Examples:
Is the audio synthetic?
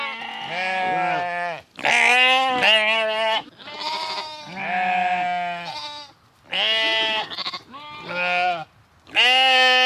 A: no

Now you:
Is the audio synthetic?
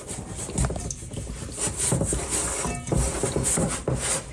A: no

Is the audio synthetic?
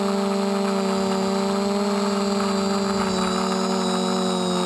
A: no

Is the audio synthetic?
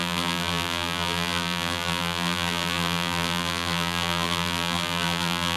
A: yes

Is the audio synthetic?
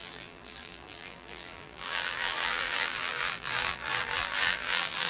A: yes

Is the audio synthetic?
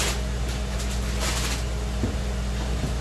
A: no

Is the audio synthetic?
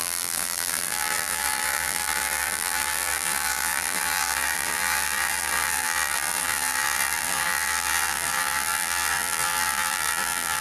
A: yes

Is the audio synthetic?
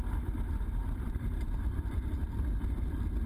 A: yes